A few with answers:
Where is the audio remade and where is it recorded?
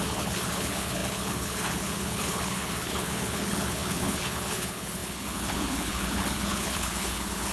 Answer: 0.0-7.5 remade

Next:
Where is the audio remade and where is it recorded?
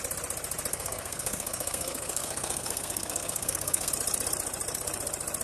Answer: 0.0-0.7 recorded; 0.7-3.9 remade; 3.9-5.4 recorded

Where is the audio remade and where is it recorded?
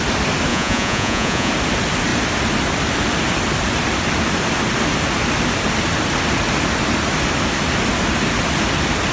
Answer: 0.0-0.5 recorded; 0.5-1.5 remade; 1.5-9.1 recorded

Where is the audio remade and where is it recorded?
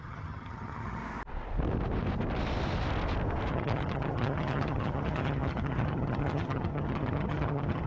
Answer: 0.0-1.0 remade; 1.0-3.5 recorded; 3.5-7.9 remade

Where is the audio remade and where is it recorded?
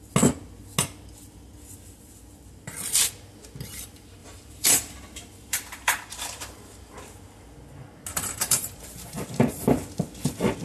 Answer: 0.0-4.2 recorded; 4.2-6.9 remade; 6.9-8.1 recorded; 8.1-9.8 remade; 9.8-10.6 recorded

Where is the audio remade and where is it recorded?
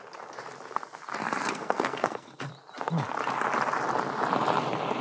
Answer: 0.0-1.2 recorded; 1.2-2.5 remade; 2.5-5.0 recorded